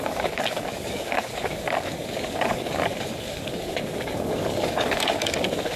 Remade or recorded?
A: remade